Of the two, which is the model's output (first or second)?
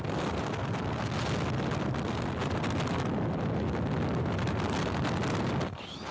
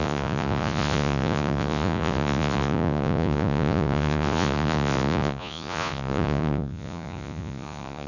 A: second